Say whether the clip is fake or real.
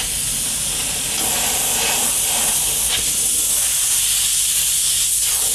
fake